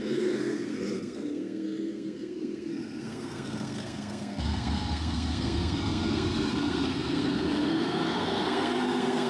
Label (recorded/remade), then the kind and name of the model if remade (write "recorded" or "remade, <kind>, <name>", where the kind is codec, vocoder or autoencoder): remade, codec, SNAC